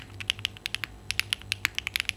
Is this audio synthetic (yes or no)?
no